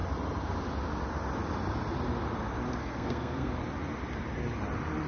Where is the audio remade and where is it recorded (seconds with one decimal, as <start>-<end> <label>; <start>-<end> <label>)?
0.0-2.8 recorded; 2.8-3.5 remade; 3.5-5.1 recorded

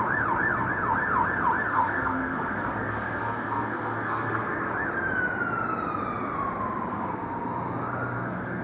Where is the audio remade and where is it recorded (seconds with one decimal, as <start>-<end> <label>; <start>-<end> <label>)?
0.0-1.7 recorded; 1.7-4.7 remade; 4.7-6.9 recorded; 6.9-8.6 remade

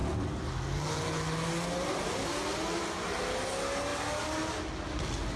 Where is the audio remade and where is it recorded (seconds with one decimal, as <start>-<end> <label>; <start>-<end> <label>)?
0.0-5.4 recorded